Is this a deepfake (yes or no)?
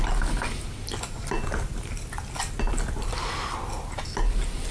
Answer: no